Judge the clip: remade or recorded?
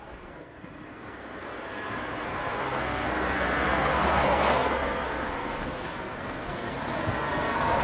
remade